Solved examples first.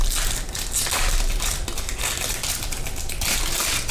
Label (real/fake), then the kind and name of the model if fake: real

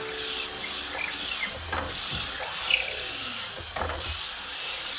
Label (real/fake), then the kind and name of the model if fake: real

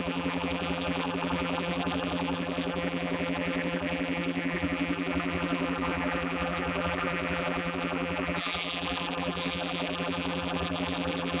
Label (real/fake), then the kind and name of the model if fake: fake, vocoder, BigVGAN v2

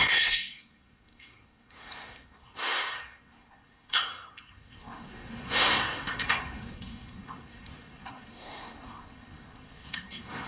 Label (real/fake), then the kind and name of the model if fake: fake, codec, SNAC